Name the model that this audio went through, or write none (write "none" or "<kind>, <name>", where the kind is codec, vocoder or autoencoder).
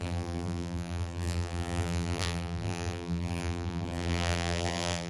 vocoder, BigVGAN v2